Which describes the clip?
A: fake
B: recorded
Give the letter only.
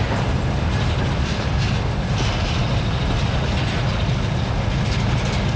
B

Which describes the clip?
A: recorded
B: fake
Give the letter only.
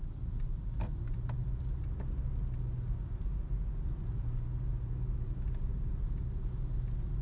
A